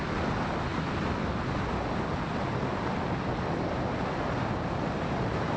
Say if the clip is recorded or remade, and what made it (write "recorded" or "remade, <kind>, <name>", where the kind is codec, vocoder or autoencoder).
recorded